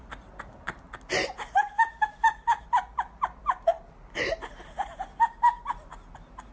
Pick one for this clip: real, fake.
real